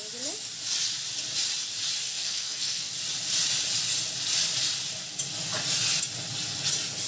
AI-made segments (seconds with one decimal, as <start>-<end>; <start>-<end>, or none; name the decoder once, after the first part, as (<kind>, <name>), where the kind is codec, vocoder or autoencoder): 2.1-2.9 (codec, SNAC)